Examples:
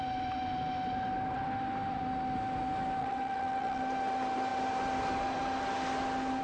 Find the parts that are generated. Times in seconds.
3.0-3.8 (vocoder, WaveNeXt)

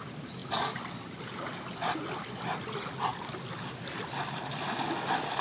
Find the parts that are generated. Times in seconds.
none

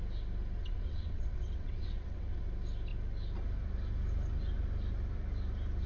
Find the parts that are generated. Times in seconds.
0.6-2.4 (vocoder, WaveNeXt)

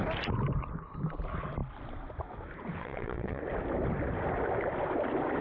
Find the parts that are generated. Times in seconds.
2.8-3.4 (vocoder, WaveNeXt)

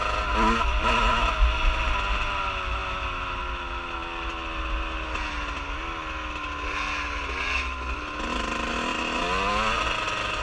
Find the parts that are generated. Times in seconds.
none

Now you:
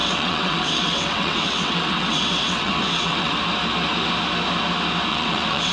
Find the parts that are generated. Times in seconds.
0.0-3.4 (vocoder, WaveNeXt); 5.1-5.7

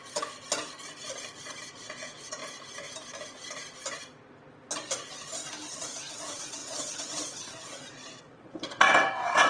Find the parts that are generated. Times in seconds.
1.7-2.4 (vocoder, WaveNeXt); 6.1-9.5

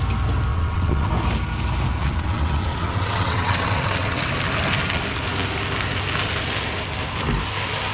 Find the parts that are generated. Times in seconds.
0.5-1.1 (vocoder, WaveNeXt); 2.0-4.3